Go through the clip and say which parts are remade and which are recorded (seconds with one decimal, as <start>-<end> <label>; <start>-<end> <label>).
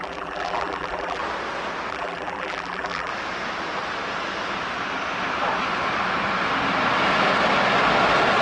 0.0-1.2 remade; 1.2-1.9 recorded; 1.9-3.1 remade; 3.1-8.4 recorded